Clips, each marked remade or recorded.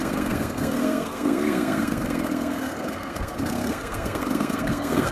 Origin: remade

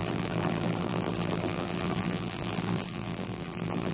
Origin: remade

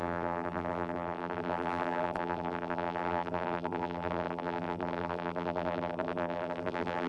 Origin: remade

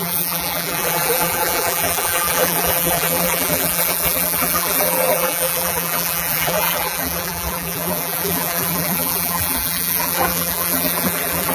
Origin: remade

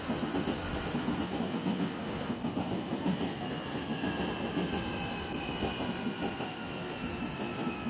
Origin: recorded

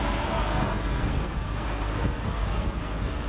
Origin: remade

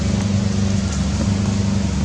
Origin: recorded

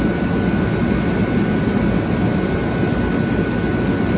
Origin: recorded